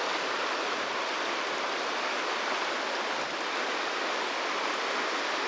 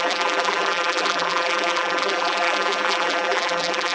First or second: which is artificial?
second